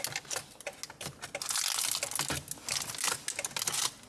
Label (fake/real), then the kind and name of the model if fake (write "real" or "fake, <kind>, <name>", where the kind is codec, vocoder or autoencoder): real